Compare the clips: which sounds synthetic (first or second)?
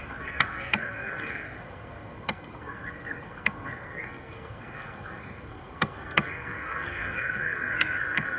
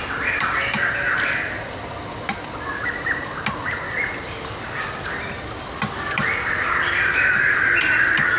first